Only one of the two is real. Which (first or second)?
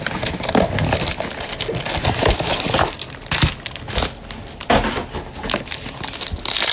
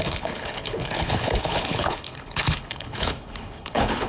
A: first